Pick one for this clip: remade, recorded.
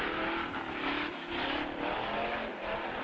recorded